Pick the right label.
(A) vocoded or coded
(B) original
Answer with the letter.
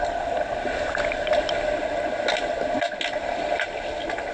B